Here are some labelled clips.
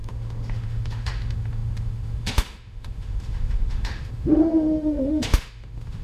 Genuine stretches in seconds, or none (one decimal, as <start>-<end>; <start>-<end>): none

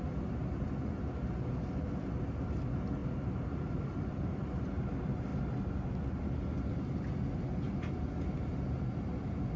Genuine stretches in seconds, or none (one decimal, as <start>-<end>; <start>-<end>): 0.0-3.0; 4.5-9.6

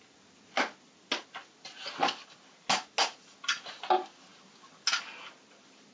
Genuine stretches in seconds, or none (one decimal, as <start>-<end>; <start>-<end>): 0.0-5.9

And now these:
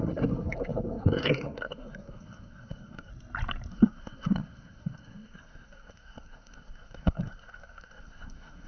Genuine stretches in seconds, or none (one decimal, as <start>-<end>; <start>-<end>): 3.1-3.7

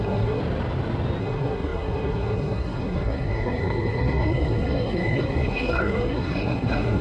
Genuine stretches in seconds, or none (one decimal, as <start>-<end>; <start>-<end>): 0.4-1.2

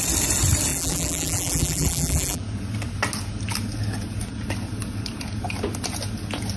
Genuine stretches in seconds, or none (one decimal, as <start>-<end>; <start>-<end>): 0.0-0.7; 2.4-6.6

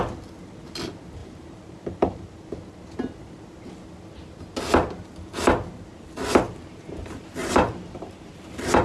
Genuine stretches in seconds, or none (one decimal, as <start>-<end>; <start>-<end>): 0.0-1.2; 2.2-7.4